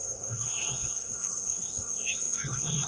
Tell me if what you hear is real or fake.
fake